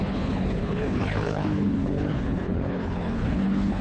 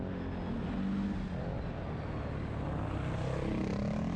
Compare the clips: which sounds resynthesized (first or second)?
first